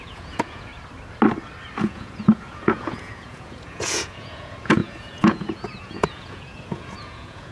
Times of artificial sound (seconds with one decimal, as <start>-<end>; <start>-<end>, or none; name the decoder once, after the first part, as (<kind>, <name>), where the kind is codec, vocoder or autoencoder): 0.0-0.7 (vocoder, Vocos); 1.8-7.5